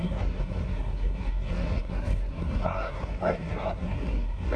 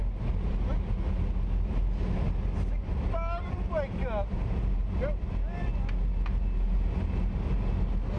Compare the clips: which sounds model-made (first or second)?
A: first